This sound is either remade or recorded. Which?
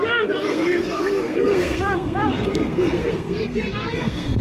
remade